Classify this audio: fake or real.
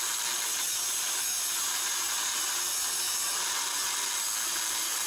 real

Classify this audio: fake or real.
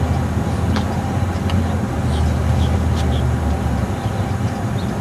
real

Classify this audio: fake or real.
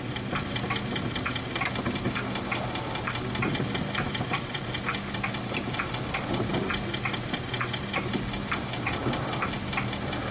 real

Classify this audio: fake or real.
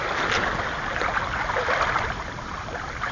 real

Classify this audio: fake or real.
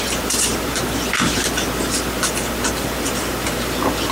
fake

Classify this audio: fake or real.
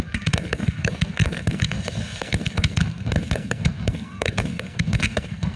fake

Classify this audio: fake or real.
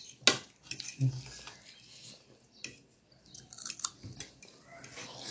real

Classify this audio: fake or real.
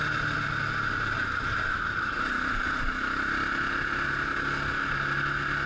real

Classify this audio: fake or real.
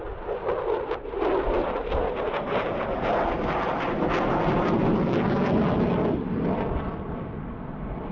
real